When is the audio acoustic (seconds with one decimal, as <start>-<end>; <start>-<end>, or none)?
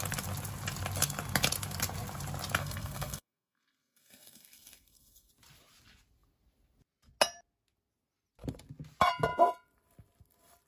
0.0-2.6; 5.3-10.7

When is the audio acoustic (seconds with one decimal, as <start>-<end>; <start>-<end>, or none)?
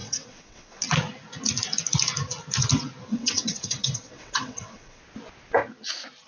0.8-3.1; 5.0-6.3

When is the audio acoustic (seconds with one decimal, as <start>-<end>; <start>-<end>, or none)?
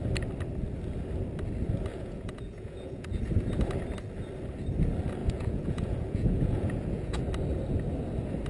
0.0-1.9; 3.2-5.2; 7.2-8.5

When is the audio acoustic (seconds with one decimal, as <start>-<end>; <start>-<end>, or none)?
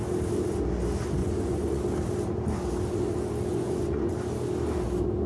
0.0-1.2; 1.8-3.5; 4.1-5.3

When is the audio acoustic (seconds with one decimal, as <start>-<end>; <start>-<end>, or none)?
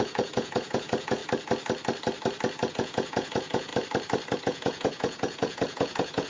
1.2-2.7; 3.7-4.4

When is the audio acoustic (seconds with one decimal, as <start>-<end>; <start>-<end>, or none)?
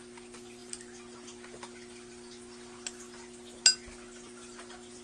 0.0-5.0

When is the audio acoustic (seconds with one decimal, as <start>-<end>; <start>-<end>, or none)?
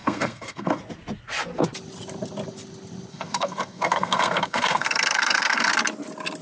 0.8-3.1; 5.7-6.4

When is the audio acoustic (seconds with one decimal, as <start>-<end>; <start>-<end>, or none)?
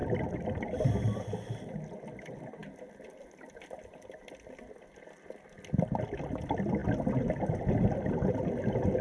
1.5-9.0